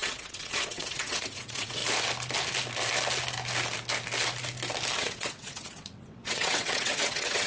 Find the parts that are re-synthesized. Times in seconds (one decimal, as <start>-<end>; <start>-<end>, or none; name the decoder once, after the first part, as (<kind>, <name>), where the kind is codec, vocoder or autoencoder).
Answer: 0.0-1.8 (vocoder, WaveNeXt); 5.0-7.5